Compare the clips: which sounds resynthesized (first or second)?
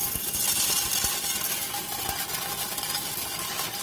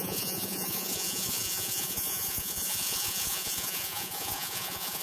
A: second